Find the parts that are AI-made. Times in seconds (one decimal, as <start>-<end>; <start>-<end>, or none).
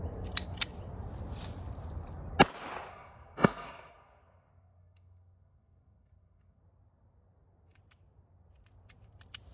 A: 2.9-6.6